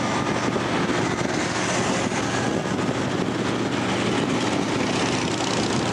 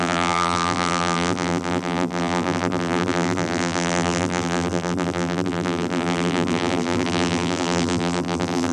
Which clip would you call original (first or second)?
first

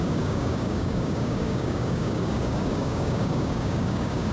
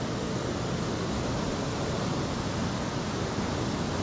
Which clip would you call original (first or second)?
second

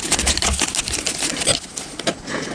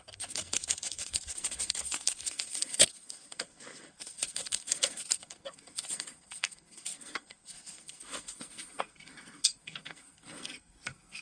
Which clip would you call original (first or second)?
first